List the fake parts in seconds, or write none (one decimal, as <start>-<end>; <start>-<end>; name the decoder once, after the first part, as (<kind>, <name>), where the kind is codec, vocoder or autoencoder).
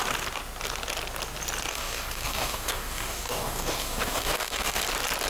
1.7-4.8 (codec, DAC)